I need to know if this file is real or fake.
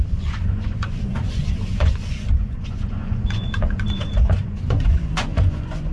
fake